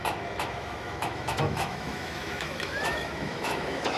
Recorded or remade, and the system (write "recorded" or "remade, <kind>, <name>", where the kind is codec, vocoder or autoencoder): remade, autoencoder, DAC-VAE